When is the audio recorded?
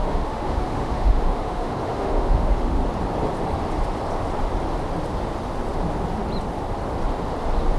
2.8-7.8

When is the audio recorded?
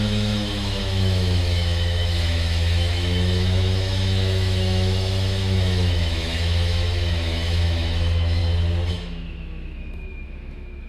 8.4-8.9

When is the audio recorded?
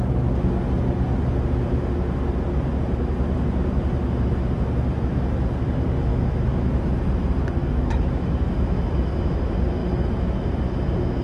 0.0-6.1; 6.8-7.6; 9.4-9.8; 10.5-11.2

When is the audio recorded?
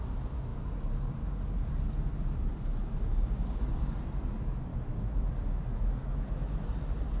0.0-4.7; 6.7-7.2